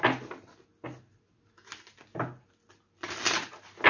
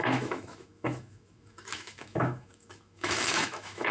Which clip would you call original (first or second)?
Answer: first